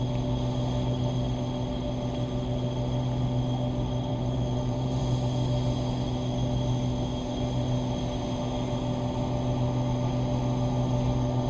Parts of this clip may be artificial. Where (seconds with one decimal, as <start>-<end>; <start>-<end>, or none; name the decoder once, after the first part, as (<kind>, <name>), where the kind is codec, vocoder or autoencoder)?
4.1-5.0 (vocoder, BigVGAN v2)